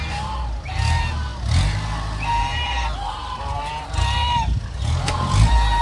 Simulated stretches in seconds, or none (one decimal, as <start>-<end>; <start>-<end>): none